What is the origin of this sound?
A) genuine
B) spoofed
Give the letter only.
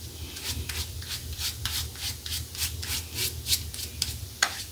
A